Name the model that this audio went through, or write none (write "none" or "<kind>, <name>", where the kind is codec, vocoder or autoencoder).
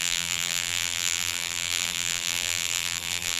vocoder, BigVGAN v2